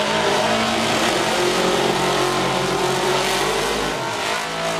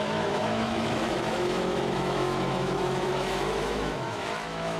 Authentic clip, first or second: first